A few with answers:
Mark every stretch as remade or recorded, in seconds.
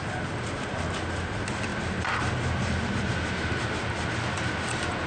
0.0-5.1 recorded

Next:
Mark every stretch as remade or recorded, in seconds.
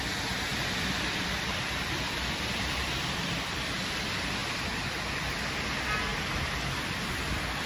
0.0-0.5 recorded; 0.5-3.8 remade; 3.8-4.4 recorded; 4.4-5.0 remade; 5.0-6.1 recorded; 6.1-6.8 remade; 6.8-7.7 recorded